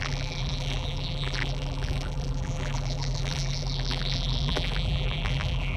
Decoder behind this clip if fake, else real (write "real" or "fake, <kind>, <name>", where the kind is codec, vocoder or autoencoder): fake, vocoder, BigVGAN v2